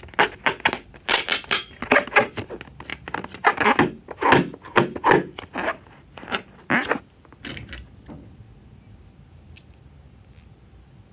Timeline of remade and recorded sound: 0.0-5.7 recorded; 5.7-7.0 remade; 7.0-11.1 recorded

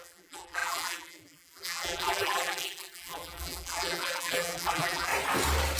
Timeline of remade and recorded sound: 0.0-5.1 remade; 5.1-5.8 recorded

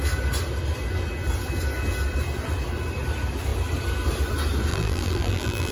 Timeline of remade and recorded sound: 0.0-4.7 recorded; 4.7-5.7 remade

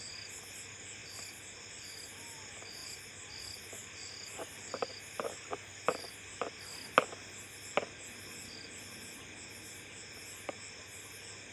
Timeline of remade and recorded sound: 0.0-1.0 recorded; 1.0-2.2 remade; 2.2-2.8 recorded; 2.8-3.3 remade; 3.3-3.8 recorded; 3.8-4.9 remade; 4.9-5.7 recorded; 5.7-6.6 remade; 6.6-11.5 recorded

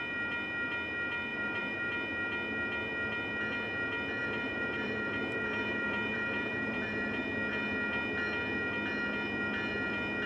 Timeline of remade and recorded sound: 0.0-1.3 recorded; 1.3-1.9 remade; 1.9-4.2 recorded; 4.2-7.2 remade; 7.2-10.3 recorded

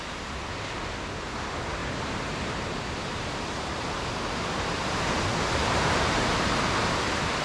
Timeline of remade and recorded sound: 0.0-1.8 recorded; 1.8-4.4 remade; 4.4-5.6 recorded; 5.6-6.5 remade; 6.5-7.4 recorded

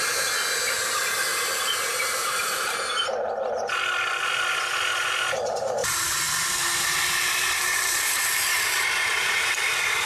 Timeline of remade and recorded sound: 0.0-1.3 recorded; 1.3-2.8 remade; 2.8-5.8 recorded; 5.8-9.5 remade; 9.5-10.1 recorded

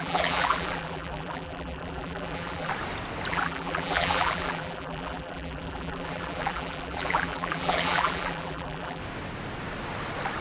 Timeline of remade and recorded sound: 0.0-2.7 remade; 2.7-3.3 recorded; 3.3-9.0 remade; 9.0-10.4 recorded